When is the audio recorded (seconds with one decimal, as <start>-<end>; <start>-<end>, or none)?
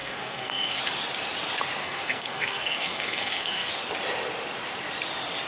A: 0.8-1.8; 3.7-5.5